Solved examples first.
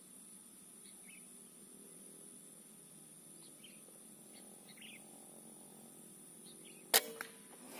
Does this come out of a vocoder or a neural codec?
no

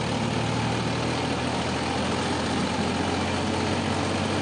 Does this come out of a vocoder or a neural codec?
no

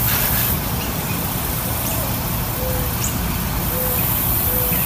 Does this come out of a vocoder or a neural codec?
no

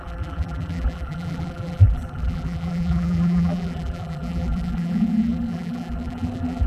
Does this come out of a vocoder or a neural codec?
yes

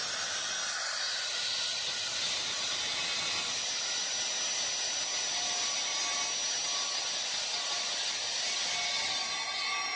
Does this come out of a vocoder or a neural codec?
no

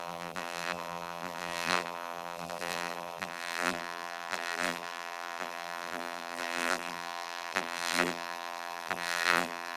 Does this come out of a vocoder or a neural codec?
yes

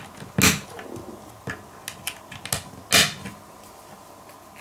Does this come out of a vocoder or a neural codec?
no